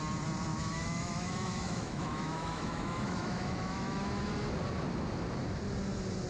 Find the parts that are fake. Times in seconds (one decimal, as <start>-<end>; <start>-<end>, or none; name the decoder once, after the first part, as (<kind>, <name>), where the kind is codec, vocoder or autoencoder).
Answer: 0.5-4.3 (autoencoder, DAC-VAE)